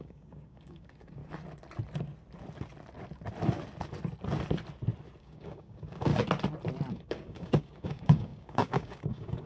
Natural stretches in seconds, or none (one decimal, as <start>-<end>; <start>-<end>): 1.2-5.2; 6.1-6.9